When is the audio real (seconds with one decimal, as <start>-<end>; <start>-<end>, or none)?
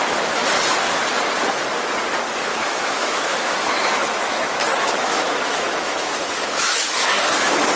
0.0-2.5; 7.2-7.8